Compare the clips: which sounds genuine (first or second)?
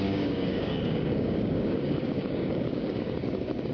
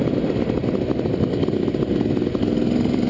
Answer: second